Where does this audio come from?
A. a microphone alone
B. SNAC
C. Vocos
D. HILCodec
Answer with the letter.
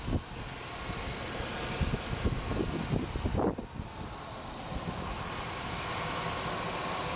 A